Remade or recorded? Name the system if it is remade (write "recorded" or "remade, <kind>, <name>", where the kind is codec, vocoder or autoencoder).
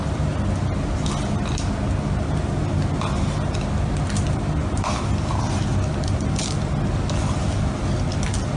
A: recorded